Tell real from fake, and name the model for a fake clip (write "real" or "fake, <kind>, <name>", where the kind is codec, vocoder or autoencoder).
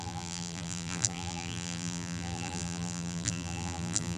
fake, vocoder, BigVGAN v2